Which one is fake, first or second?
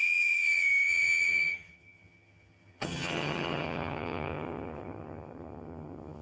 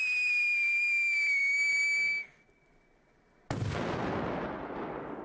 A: first